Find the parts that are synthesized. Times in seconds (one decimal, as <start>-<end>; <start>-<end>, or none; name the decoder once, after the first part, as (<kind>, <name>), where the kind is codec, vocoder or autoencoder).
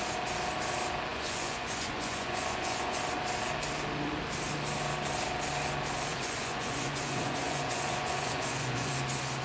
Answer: 1.1-3.0 (vocoder, Vocos); 6.1-8.9